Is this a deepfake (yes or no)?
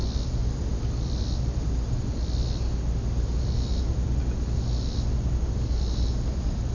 no